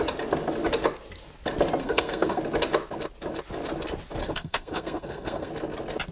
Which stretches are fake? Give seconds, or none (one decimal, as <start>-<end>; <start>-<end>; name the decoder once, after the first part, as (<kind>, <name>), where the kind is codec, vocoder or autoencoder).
1.8-2.4 (codec, SNAC); 4.2-5.5